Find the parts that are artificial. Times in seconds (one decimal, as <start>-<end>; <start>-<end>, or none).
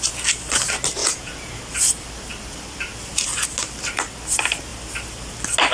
1.0-1.6